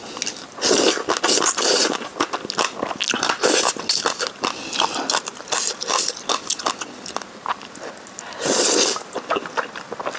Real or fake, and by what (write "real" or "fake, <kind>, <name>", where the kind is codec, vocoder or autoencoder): real